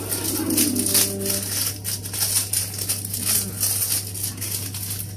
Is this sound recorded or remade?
recorded